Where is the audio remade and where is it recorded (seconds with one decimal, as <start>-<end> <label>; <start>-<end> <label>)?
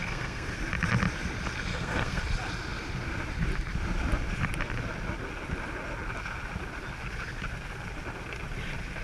0.0-0.6 remade; 0.6-1.7 recorded; 1.7-2.2 remade; 2.2-9.0 recorded